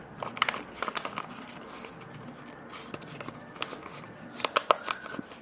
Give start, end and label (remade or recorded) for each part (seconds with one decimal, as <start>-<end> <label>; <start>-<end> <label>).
0.0-5.4 recorded